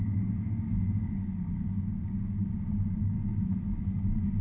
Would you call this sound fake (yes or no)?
yes